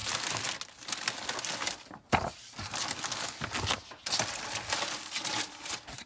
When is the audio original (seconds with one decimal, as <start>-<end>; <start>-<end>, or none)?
0.0-6.1